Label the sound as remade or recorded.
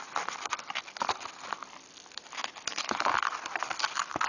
recorded